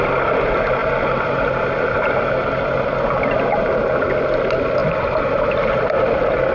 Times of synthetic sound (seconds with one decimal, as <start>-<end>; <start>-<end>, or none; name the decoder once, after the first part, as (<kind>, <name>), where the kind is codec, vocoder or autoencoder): 4.8-5.4 (vocoder, BigVGAN v2)